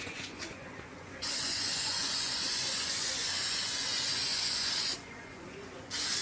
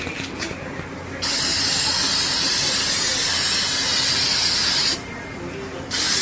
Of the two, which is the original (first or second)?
second